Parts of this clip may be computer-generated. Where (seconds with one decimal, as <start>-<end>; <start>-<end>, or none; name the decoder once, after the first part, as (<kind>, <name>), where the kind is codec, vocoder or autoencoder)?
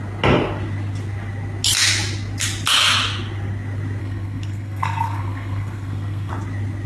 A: 4.0-6.3 (codec, SNAC)